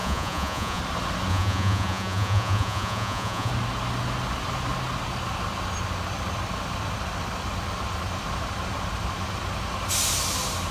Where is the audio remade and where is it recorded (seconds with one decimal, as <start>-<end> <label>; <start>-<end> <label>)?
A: 0.0-0.8 remade; 0.8-1.3 recorded; 1.3-3.5 remade; 3.5-10.7 recorded